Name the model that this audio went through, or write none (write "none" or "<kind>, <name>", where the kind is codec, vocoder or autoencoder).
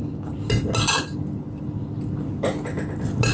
none